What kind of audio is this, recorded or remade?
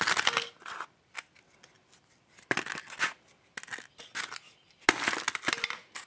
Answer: recorded